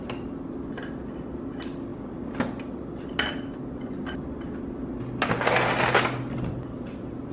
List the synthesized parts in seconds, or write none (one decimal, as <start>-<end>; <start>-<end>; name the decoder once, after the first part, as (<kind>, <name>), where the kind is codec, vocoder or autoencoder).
none